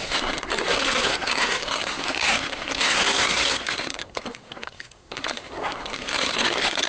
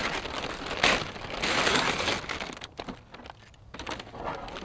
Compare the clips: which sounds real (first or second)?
second